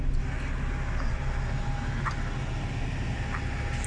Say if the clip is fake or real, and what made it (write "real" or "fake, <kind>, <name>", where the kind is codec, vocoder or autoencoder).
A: real